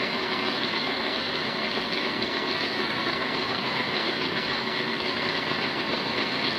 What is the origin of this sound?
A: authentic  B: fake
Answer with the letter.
B